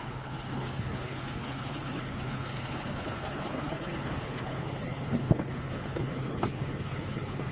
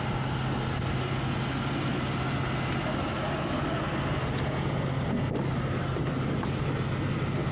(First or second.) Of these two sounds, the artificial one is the first